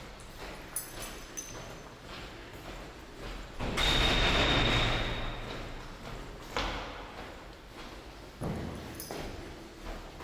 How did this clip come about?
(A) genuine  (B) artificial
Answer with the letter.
A